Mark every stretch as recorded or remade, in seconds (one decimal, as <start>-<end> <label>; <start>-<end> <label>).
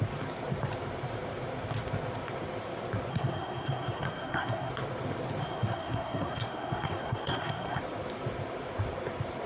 0.0-3.1 recorded; 3.1-4.7 remade; 4.7-5.4 recorded; 5.4-7.8 remade; 7.8-9.5 recorded